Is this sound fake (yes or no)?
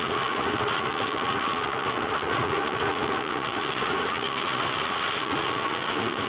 yes